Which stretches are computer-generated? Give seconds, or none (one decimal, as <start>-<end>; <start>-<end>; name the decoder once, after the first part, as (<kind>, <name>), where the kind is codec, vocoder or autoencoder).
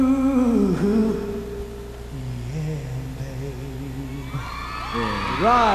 none